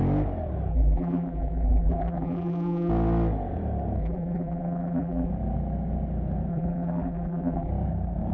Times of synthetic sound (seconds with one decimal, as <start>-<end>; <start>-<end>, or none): 0.7-2.9; 4.0-5.3; 6.5-7.7